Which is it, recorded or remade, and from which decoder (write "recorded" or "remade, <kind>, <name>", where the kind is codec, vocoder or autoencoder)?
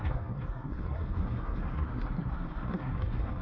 remade, codec, SNAC